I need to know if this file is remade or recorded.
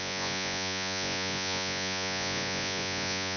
remade